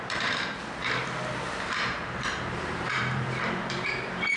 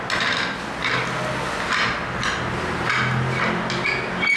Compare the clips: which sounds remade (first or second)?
first